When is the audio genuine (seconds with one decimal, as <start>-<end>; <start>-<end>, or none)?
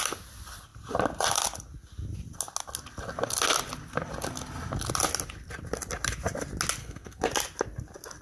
0.0-6.8; 7.3-8.2